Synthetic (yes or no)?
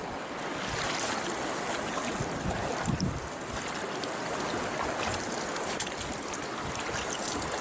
no